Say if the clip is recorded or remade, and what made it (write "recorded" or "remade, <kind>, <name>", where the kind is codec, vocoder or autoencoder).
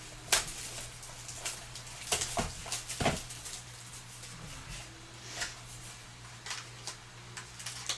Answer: recorded